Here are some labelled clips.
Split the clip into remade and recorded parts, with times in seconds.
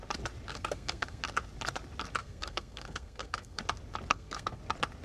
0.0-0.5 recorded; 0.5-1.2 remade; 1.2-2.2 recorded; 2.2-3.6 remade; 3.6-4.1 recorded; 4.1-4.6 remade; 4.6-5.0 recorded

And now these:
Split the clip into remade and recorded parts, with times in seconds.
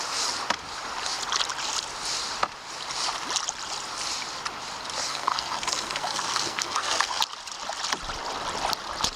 0.0-5.0 recorded; 5.0-7.2 remade; 7.2-9.2 recorded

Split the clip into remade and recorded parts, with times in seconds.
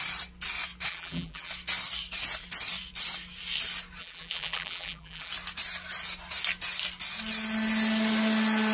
0.0-0.9 recorded; 0.9-1.5 remade; 1.5-4.0 recorded; 4.0-5.3 remade; 5.3-8.7 recorded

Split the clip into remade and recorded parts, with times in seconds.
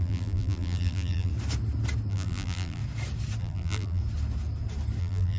0.0-1.3 remade; 1.3-2.1 recorded; 2.1-2.8 remade; 2.8-3.4 recorded; 3.4-4.0 remade; 4.0-5.0 recorded; 5.0-5.4 remade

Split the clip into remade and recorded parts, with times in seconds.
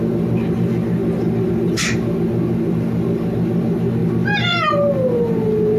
0.0-5.8 recorded